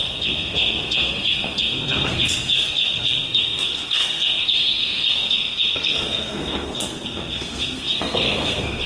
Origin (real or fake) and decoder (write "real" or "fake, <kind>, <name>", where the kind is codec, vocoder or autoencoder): fake, codec, SNAC